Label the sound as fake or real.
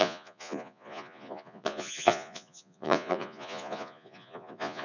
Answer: fake